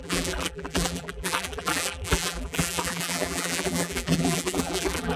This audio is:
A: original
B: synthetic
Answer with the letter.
B